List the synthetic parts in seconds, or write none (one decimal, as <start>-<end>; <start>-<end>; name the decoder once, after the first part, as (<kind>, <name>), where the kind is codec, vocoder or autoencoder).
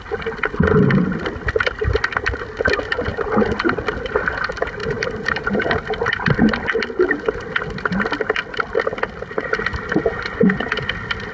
4.8-5.7 (vocoder, BigVGAN v2)